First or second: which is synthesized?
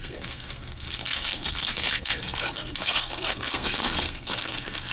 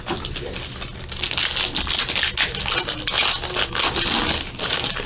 first